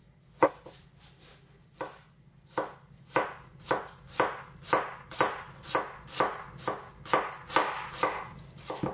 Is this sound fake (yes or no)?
no